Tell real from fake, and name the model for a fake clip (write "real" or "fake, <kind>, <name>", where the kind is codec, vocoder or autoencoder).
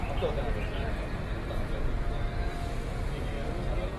real